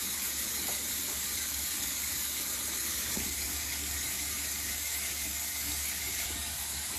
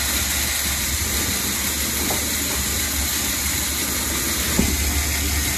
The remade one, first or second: first